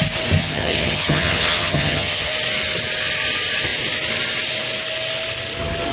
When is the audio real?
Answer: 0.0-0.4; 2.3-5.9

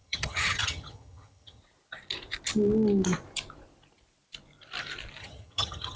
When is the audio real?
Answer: 1.6-5.2

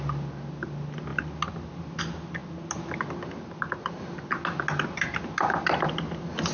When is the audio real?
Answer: 0.0-6.5

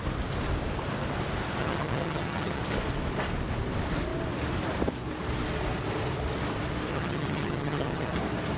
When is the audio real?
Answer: 0.0-1.6; 2.6-6.9; 8.2-8.6

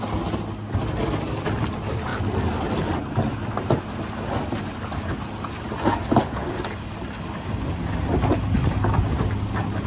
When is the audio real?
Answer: 0.0-9.9

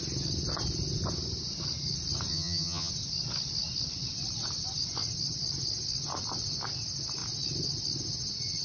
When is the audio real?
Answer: 0.0-2.3; 2.9-8.6

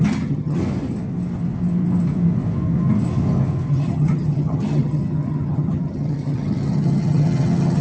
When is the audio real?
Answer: 0.6-3.7

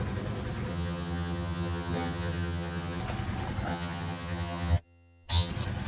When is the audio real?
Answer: 0.0-0.7; 3.0-3.7; 5.5-5.9